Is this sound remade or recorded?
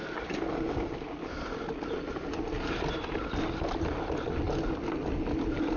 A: recorded